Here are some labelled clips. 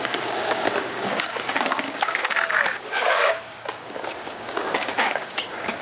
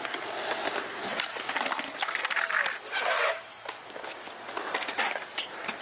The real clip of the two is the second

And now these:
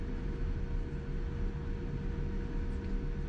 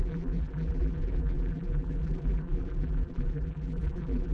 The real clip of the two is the first